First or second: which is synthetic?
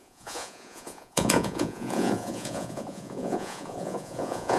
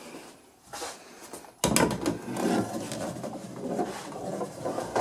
first